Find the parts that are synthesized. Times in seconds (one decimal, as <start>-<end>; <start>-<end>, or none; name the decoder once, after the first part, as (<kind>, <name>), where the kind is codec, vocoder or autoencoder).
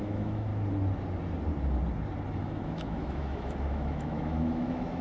0.0-0.5 (autoencoder, DAC-VAE); 2.4-5.0